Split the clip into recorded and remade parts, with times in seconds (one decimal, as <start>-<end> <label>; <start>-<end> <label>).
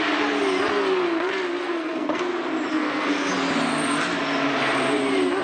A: 0.0-1.6 recorded; 1.6-2.3 remade; 2.3-2.7 recorded; 2.7-3.3 remade; 3.3-5.4 recorded